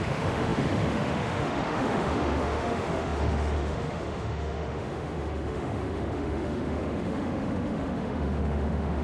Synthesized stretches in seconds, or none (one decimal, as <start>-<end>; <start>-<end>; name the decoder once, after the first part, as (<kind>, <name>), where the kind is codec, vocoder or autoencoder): 0.0-9.0 (autoencoder, DAC-VAE)